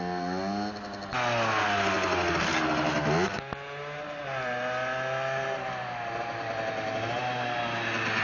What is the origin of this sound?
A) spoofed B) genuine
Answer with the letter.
B